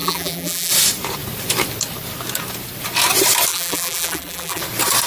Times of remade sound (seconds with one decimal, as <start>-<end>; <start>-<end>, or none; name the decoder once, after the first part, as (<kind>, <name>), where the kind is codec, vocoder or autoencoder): 0.0-0.7 (vocoder, BigVGAN v2); 3.5-4.6